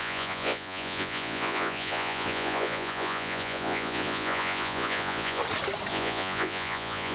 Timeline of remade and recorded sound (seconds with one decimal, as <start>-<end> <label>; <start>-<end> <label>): 0.0-5.4 remade; 5.4-5.9 recorded; 5.9-7.1 remade